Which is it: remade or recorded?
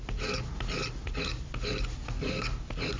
recorded